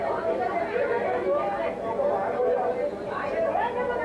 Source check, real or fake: real